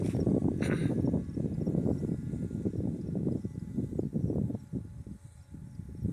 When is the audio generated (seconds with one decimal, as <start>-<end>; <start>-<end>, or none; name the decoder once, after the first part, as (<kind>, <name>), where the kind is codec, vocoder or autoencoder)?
0.8-3.0 (vocoder, BigVGAN v2); 4.1-5.6